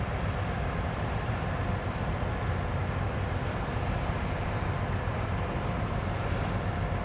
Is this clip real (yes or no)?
yes